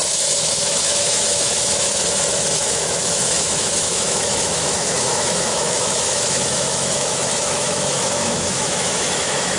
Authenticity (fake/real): fake